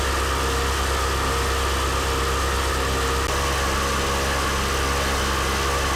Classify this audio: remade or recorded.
recorded